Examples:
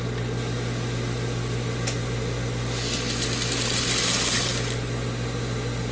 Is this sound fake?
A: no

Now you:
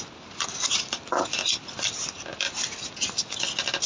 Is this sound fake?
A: no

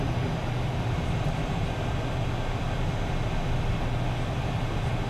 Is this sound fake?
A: no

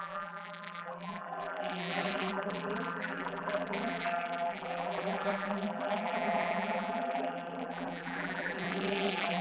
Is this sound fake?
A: yes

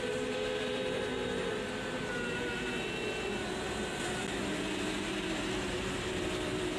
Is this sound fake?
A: no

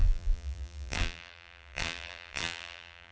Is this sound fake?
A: yes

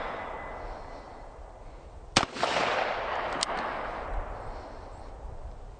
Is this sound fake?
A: no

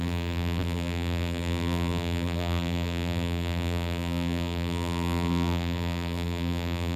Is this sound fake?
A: yes